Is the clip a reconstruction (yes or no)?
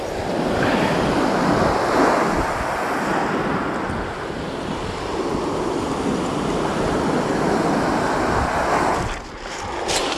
no